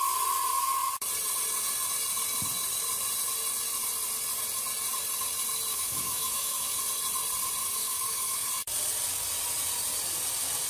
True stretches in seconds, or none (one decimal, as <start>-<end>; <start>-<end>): 0.0-5.7; 6.8-7.6; 8.5-10.7